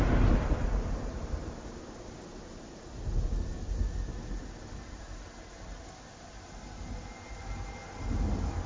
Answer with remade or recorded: recorded